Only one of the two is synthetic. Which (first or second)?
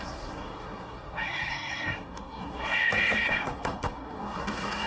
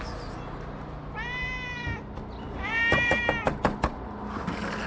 first